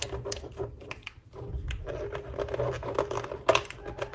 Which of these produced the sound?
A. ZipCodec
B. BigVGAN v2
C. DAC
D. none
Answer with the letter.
D